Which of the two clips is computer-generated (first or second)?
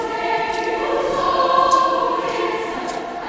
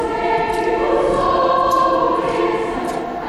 first